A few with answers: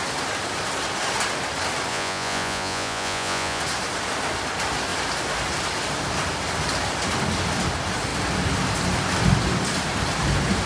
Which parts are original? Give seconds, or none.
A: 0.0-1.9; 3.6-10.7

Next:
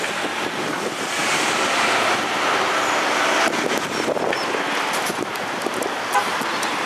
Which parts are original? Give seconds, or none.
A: 0.0-6.9

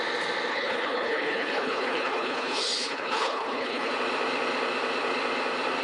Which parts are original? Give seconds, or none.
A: 0.0-0.5; 3.9-5.8